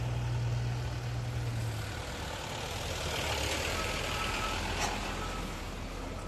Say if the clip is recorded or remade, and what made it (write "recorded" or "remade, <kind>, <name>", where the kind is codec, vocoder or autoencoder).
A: recorded